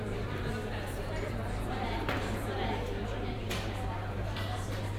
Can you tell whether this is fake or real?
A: fake